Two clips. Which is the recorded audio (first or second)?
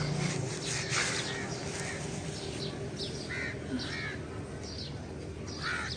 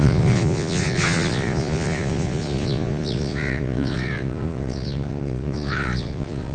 first